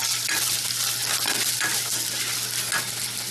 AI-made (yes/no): no